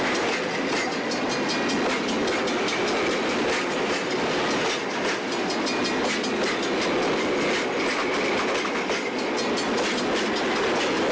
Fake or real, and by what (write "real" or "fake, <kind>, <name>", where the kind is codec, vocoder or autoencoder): real